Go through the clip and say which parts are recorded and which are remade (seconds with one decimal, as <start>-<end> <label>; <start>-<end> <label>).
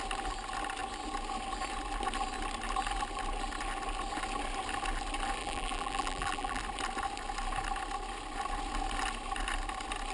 0.0-5.4 recorded; 5.4-6.6 remade; 6.6-10.1 recorded